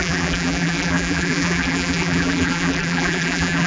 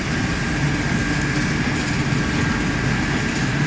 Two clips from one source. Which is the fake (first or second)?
first